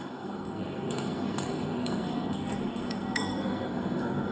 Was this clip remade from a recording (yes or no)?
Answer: yes